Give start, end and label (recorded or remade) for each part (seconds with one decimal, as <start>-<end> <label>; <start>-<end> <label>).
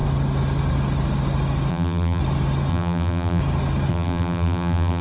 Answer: 0.0-1.7 recorded; 1.7-2.2 remade; 2.2-2.7 recorded; 2.7-3.4 remade; 3.4-3.9 recorded; 3.9-5.0 remade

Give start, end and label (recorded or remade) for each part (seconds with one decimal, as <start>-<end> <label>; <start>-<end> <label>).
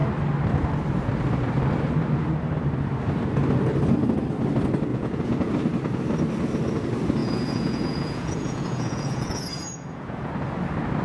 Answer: 0.0-4.9 recorded; 4.9-5.5 remade; 5.5-7.2 recorded; 7.2-10.3 remade; 10.3-11.0 recorded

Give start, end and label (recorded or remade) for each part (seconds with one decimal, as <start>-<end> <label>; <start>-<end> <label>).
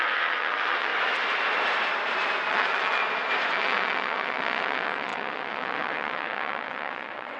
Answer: 0.0-0.9 remade; 0.9-2.5 recorded; 2.5-3.0 remade; 3.0-3.5 recorded; 3.5-7.4 remade